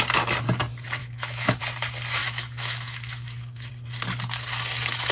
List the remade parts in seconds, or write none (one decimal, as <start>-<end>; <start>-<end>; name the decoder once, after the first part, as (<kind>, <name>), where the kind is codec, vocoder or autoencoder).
1.0-1.6 (autoencoder, DAC-VAE); 2.2-3.7